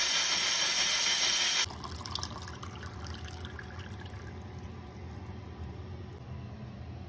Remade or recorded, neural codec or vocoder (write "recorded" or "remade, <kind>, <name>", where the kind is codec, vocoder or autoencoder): recorded